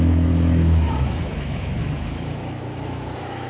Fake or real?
fake